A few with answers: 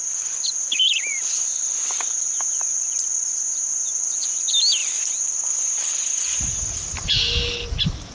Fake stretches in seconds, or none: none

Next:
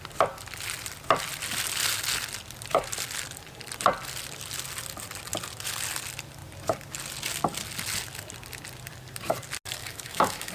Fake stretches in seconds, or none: 9.8-10.5 (autoencoder, DAC-VAE)

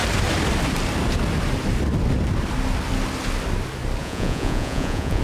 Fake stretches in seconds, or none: 4.0-5.2 (vocoder, Vocos)

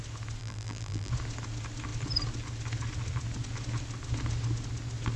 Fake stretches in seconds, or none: 0.4-1.1 (vocoder, BigVGAN v2)

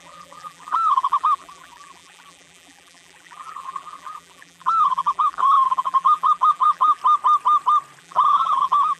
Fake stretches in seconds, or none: 0.0-7.0 (vocoder, BigVGAN v2); 8.0-9.0

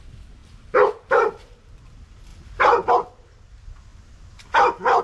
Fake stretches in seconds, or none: 0.4-1.9 (vocoder, BigVGAN v2); 2.3-2.9

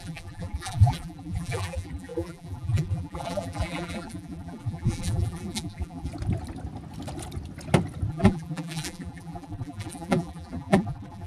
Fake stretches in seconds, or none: 0.0-6.1 (vocoder, BigVGAN v2); 8.1-11.3